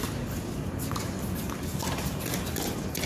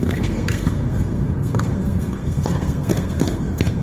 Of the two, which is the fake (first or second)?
second